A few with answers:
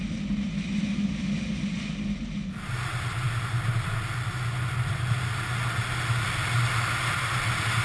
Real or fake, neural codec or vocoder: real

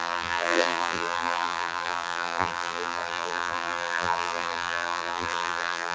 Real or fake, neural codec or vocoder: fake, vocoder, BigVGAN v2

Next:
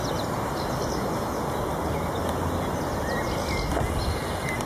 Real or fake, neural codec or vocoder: real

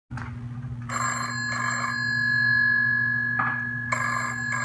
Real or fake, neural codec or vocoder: real